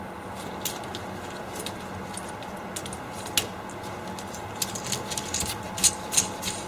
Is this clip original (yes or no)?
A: yes